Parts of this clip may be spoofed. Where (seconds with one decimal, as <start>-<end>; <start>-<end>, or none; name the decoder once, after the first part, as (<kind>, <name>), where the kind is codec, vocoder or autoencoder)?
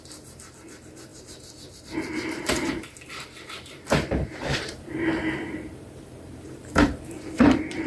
0.0-7.9 (vocoder, BigVGAN v2)